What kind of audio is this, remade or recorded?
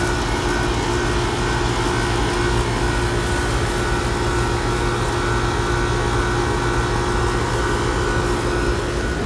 recorded